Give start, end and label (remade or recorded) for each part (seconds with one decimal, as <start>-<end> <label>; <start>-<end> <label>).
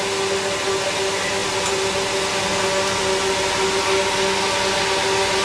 0.0-5.4 recorded